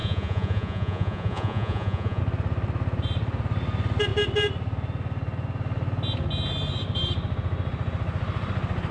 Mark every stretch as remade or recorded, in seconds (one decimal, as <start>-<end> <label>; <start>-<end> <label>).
0.0-2.2 remade; 2.2-8.9 recorded